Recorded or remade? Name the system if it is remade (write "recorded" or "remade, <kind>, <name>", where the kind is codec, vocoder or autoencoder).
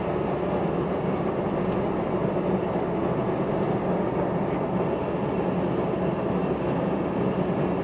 recorded